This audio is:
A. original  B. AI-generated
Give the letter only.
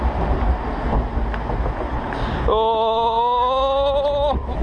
A